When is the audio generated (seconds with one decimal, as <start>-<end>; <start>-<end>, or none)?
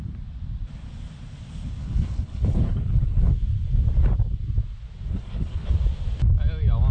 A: 1.8-3.3; 5.1-5.7